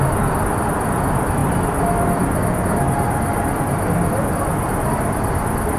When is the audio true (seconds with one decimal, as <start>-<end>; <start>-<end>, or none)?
0.0-5.8